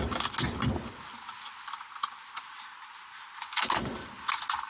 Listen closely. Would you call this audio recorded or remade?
recorded